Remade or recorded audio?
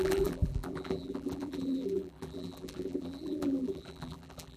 remade